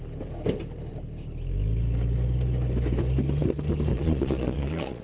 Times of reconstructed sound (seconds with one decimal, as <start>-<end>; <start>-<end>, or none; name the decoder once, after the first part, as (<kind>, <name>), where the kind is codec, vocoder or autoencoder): 3.9-5.0 (vocoder, Vocos)